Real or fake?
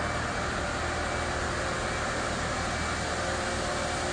real